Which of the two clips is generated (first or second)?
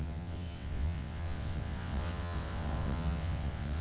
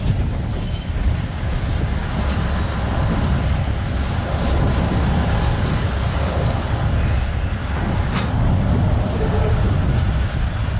first